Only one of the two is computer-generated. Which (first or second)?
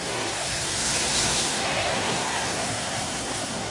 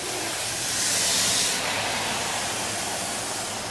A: first